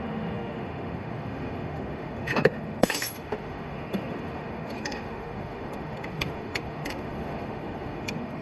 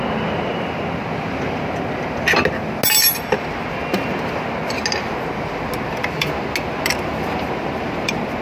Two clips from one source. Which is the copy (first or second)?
first